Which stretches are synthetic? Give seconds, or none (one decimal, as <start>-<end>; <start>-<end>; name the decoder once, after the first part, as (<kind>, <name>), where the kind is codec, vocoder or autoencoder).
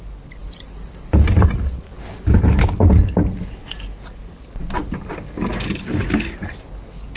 none